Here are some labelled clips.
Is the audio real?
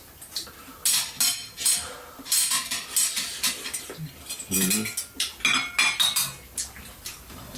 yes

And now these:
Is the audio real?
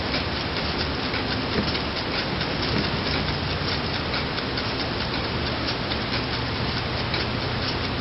yes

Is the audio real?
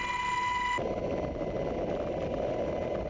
yes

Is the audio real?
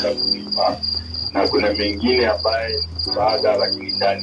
no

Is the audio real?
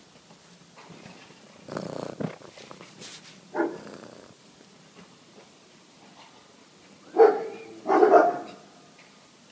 yes